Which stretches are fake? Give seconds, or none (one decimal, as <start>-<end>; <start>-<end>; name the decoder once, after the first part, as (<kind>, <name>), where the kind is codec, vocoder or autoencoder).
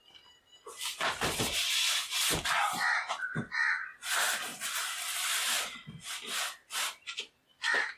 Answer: none